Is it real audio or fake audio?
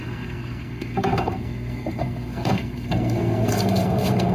fake